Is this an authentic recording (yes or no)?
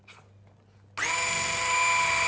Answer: yes